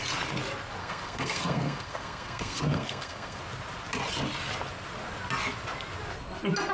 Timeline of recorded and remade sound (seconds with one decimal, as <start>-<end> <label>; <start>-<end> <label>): 0.0-0.8 recorded; 0.8-3.4 remade; 3.4-6.7 recorded